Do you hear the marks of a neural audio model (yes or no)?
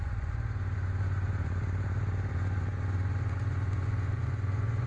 yes